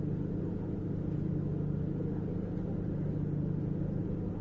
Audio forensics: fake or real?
real